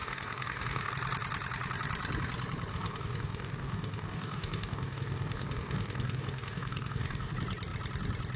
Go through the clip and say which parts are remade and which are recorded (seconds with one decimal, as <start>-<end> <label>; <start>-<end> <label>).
0.0-0.9 remade; 0.9-2.7 recorded; 2.7-7.3 remade; 7.3-8.4 recorded